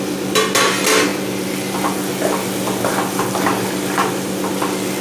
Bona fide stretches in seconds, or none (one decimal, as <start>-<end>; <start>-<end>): 0.0-5.0